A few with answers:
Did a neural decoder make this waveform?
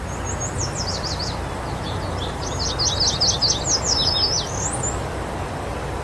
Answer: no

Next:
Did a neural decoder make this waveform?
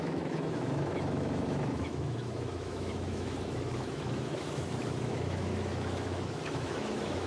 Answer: yes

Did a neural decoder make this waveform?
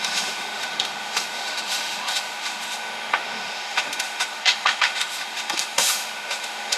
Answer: yes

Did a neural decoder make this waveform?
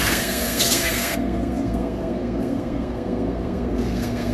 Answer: yes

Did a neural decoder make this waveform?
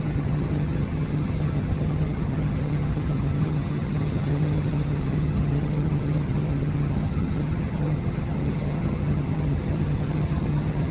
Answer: yes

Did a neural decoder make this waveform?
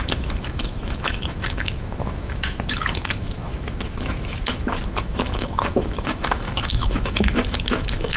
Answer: yes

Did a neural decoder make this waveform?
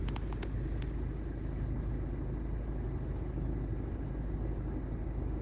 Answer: no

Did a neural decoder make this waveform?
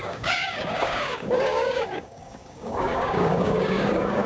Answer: yes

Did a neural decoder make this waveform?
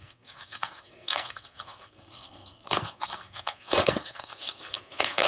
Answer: yes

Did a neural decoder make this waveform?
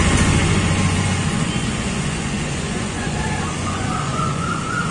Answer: yes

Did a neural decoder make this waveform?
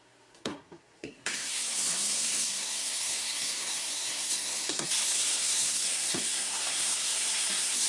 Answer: yes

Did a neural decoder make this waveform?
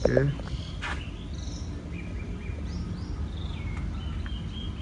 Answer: no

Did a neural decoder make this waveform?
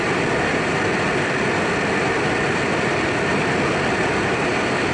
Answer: no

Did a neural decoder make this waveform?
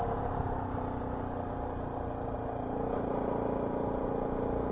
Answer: no